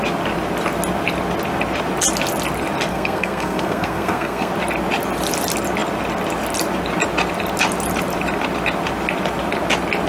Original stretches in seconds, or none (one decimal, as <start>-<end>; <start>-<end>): 0.0-2.9; 4.5-10.1